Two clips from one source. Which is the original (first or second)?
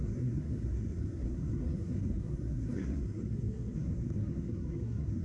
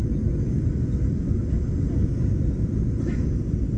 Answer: second